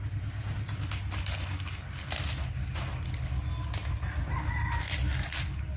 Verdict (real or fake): real